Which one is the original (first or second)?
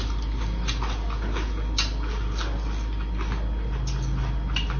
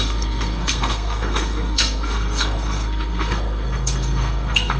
first